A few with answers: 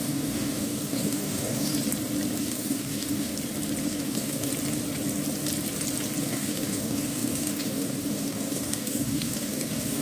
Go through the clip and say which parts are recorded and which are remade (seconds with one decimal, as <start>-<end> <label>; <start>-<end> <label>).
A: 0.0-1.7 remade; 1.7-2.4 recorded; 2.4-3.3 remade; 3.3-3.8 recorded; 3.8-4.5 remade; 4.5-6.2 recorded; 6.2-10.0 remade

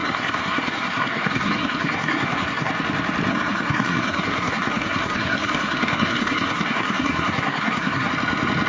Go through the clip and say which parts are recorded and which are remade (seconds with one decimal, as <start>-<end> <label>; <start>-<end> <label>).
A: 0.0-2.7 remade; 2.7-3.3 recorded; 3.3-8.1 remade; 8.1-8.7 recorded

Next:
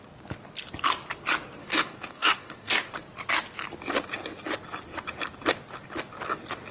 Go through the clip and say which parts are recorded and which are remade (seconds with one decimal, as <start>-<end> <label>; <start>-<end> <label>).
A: 0.0-1.6 recorded; 1.6-2.9 remade; 2.9-6.7 recorded

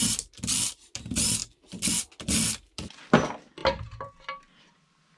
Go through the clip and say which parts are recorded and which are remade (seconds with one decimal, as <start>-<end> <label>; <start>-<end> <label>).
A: 0.0-5.2 recorded

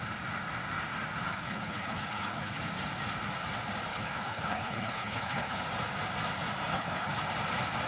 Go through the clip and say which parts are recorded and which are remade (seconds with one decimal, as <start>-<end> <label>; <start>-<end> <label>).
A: 0.0-1.3 recorded; 1.3-2.5 remade; 2.5-3.9 recorded; 3.9-5.6 remade; 5.6-6.7 recorded; 6.7-7.2 remade; 7.2-7.9 recorded